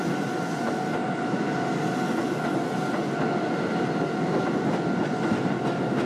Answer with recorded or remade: recorded